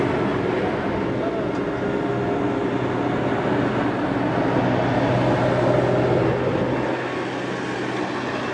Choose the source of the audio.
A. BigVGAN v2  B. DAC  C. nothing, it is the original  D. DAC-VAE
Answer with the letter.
C